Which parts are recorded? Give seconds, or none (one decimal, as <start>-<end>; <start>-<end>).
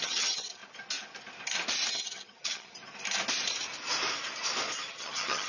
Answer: 0.6-1.9; 2.8-4.9